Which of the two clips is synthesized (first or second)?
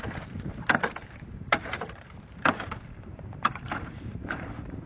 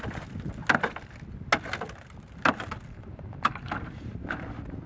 first